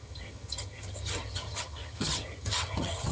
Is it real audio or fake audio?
fake